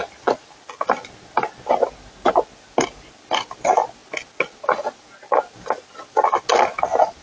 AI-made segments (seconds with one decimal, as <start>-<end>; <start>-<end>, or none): none